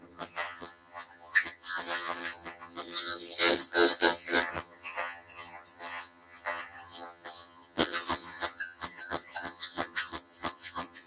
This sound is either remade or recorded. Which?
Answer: remade